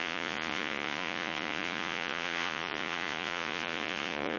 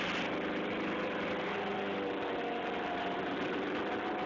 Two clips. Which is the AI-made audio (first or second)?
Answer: first